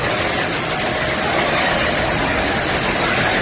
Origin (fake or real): real